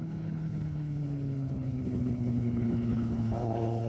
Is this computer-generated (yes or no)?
yes